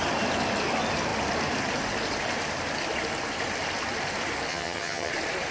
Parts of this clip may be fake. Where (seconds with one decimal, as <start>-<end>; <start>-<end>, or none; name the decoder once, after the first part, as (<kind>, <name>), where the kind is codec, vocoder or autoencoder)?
4.5-5.1 (vocoder, HiFi-GAN)